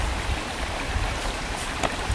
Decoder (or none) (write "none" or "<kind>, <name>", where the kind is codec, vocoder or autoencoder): none